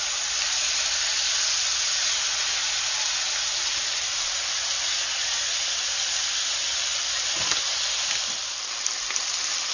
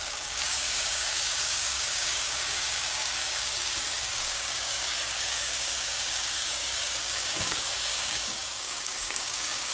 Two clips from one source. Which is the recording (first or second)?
first